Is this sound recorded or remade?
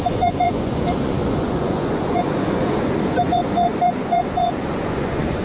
remade